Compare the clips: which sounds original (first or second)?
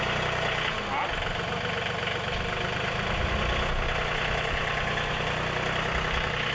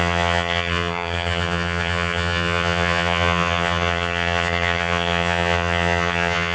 first